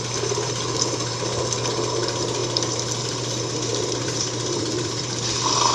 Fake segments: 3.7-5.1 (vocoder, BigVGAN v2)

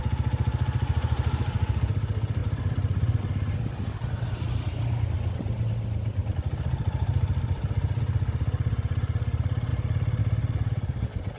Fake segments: 2.4-3.2 (vocoder, BigVGAN v2); 6.2-8.0